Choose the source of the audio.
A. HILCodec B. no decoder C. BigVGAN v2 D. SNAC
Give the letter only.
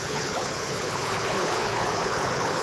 A